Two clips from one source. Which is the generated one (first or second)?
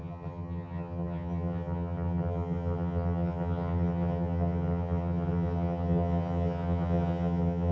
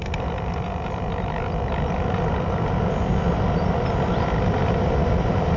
first